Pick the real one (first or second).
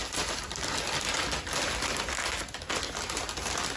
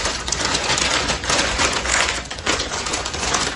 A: first